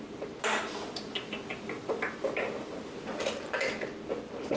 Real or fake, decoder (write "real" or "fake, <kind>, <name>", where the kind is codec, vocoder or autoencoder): real